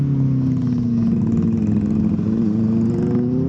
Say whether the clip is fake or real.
real